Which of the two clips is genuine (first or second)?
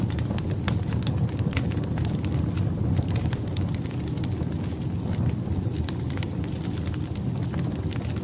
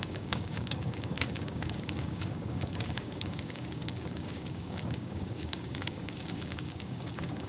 first